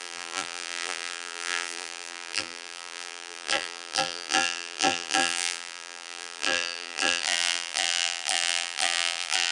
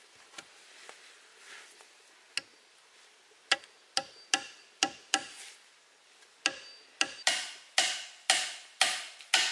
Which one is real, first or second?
second